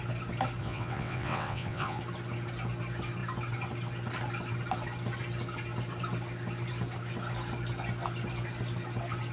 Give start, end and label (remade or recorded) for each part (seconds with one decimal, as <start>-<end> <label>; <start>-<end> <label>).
0.0-0.6 recorded; 0.6-2.0 remade; 2.0-9.3 recorded

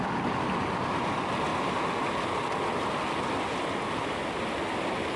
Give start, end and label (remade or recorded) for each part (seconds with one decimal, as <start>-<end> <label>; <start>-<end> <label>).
0.0-5.2 recorded

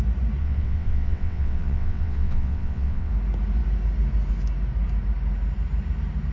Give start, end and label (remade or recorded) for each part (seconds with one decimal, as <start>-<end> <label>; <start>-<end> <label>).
0.0-0.4 recorded; 0.4-3.1 remade; 3.1-6.3 recorded

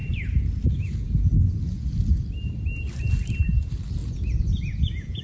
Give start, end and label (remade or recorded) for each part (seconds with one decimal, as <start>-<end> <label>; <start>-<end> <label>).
0.0-4.0 recorded; 4.0-5.2 remade

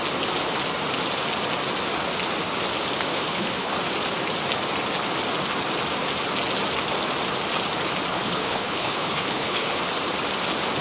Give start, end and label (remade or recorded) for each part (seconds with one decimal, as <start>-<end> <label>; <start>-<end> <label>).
0.0-3.1 recorded; 3.1-3.7 remade; 3.7-8.1 recorded; 8.1-9.8 remade; 9.8-10.8 recorded

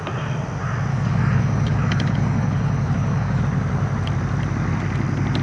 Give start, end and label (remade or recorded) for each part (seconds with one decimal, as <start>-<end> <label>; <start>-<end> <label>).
0.0-0.9 recorded; 0.9-3.4 remade; 3.4-5.4 recorded